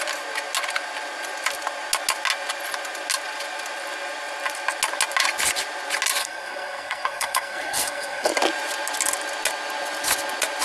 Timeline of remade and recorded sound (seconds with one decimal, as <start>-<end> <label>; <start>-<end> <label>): 0.0-6.2 recorded; 6.2-8.3 remade; 8.3-10.6 recorded